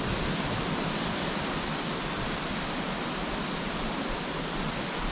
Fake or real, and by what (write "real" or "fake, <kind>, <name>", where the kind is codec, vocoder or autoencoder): real